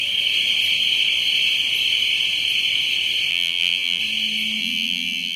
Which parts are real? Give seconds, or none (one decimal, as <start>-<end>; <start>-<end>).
0.0-3.3; 4.0-4.6